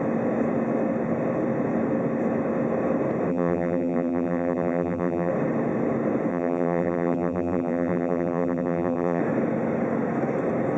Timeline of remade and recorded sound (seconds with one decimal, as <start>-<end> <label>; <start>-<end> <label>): 0.0-3.3 recorded; 3.3-5.3 remade; 5.3-6.3 recorded; 6.3-9.2 remade; 9.2-10.8 recorded